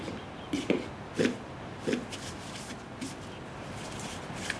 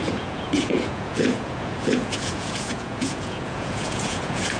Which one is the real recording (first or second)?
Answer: first